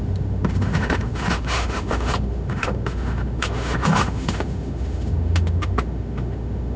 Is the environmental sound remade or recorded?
remade